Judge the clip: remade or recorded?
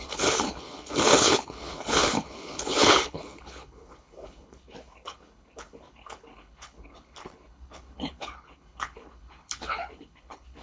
remade